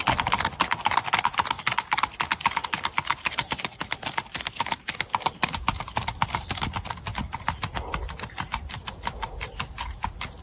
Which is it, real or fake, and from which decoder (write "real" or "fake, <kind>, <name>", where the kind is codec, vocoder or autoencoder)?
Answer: real